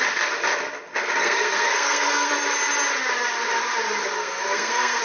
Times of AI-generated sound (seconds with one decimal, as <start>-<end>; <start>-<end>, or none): 1.2-2.3; 4.2-5.0